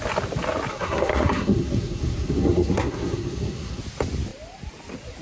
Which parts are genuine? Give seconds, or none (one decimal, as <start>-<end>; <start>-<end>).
0.0-0.7; 3.8-5.2